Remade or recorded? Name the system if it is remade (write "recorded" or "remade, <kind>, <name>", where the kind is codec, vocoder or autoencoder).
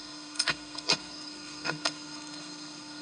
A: remade, codec, SNAC